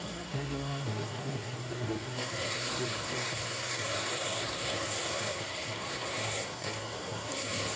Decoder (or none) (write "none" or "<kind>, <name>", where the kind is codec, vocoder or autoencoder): codec, SNAC